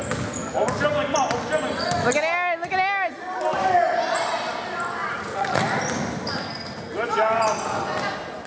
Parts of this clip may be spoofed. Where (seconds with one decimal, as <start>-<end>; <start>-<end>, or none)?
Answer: 5.0-5.6